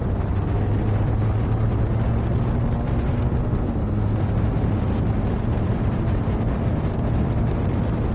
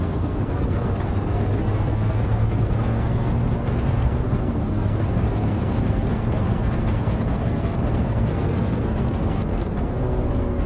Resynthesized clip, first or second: second